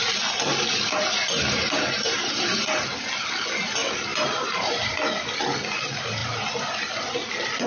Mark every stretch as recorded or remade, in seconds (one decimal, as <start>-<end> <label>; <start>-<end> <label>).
0.0-0.5 recorded; 0.5-2.8 remade; 2.8-4.1 recorded; 4.1-4.9 remade; 4.9-6.2 recorded; 6.2-7.0 remade; 7.0-7.7 recorded